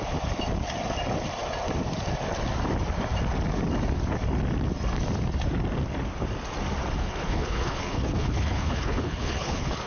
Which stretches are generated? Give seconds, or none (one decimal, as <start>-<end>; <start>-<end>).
7.0-9.9